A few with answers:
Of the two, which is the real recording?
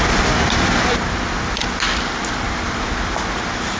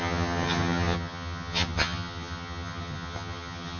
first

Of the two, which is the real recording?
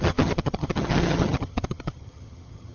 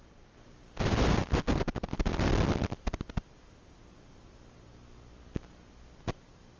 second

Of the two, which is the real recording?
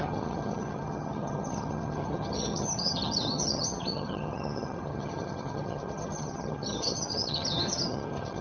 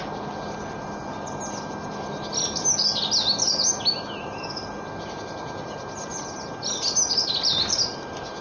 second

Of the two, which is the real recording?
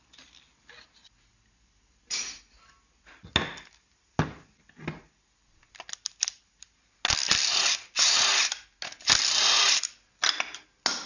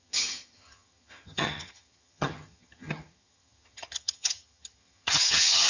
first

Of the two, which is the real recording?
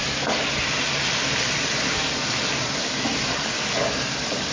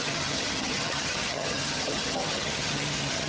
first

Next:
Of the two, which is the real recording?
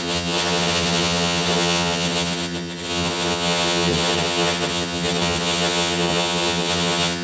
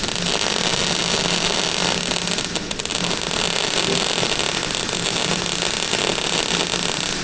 second